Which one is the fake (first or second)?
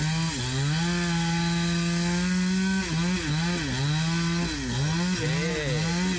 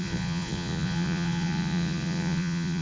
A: second